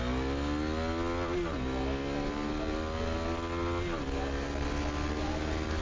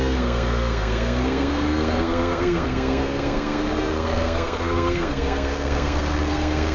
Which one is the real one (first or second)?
first